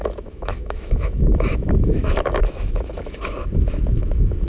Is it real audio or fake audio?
fake